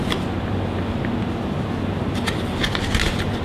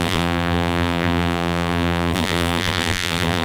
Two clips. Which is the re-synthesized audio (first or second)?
second